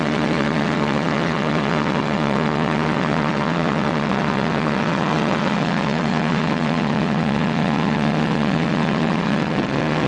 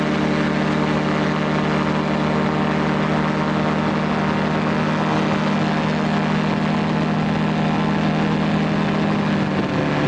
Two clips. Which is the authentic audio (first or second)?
second